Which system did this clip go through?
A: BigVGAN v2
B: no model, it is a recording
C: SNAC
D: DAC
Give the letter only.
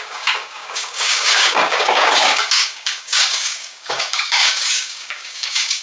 D